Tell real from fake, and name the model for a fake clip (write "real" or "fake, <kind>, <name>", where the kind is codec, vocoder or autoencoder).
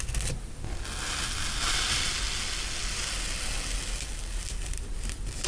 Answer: real